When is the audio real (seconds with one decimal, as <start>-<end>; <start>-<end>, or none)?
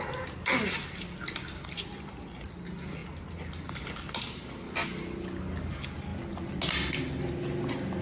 0.0-8.0